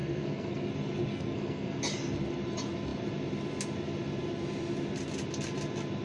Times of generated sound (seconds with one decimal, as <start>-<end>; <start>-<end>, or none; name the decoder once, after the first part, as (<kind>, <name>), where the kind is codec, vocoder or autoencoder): 0.0-0.7 (codec, SNAC); 1.1-1.8